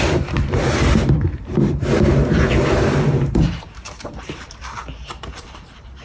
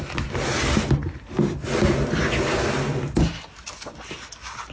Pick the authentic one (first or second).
second